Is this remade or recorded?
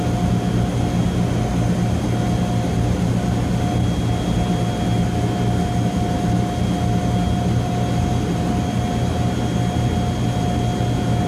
recorded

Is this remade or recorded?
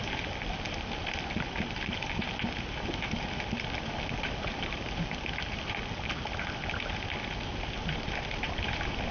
recorded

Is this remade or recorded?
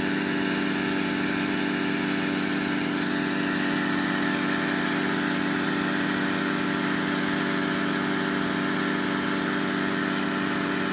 recorded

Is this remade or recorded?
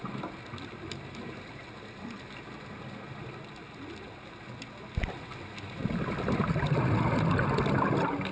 recorded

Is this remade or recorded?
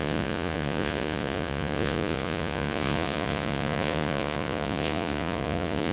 remade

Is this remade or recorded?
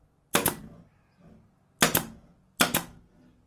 recorded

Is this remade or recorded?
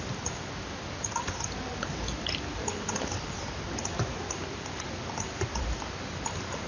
recorded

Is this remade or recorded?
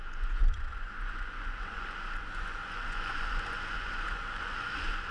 remade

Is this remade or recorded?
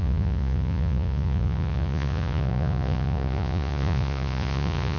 remade